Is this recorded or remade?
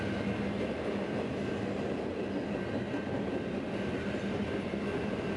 recorded